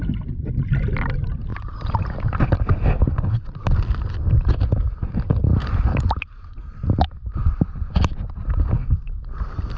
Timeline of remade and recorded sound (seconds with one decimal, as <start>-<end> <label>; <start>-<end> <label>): 0.0-1.5 recorded; 1.5-3.0 remade; 3.0-5.5 recorded; 5.5-8.3 remade; 8.3-9.8 recorded